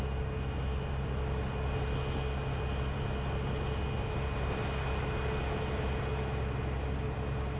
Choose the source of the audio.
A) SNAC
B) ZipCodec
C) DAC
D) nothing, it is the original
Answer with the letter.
D